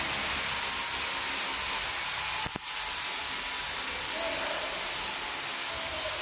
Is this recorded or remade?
recorded